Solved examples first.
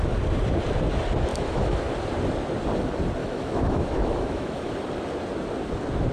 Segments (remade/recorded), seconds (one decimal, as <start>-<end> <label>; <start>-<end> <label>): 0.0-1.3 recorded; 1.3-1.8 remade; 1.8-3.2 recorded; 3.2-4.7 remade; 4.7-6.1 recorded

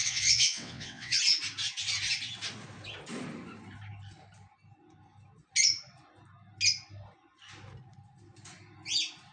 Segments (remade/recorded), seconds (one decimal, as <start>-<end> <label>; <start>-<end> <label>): 0.0-1.2 remade; 1.2-9.3 recorded

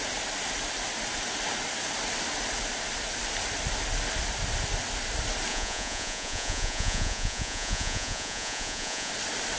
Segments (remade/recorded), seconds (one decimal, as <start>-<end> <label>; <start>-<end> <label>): 0.0-5.5 recorded; 5.5-9.1 remade; 9.1-9.6 recorded